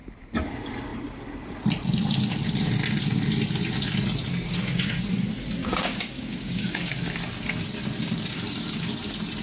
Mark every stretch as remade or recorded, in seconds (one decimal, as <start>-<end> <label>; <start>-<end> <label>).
0.0-5.6 recorded; 5.6-6.9 remade; 6.9-9.4 recorded